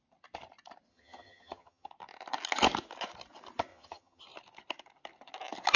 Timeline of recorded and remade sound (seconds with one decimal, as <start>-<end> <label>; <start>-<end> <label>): 0.0-0.9 recorded; 0.9-1.9 remade; 1.9-3.7 recorded; 3.7-4.2 remade; 4.2-5.8 recorded